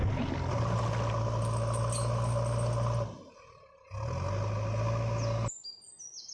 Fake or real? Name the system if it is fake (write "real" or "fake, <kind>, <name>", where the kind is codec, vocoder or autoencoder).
real